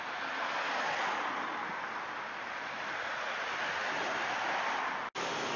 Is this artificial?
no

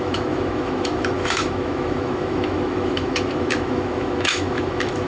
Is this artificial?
yes